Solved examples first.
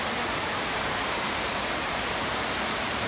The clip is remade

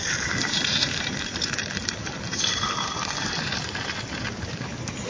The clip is remade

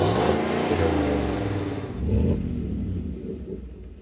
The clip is recorded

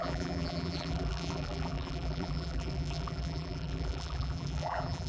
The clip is remade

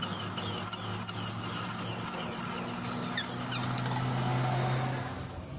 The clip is recorded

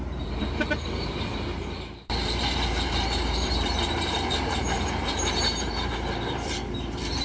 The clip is remade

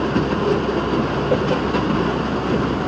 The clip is recorded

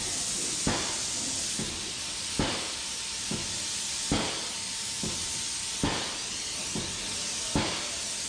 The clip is recorded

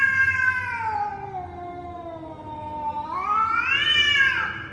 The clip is recorded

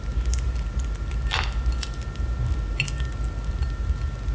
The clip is recorded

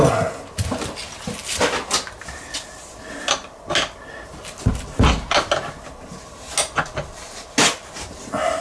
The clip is recorded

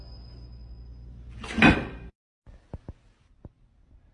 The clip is recorded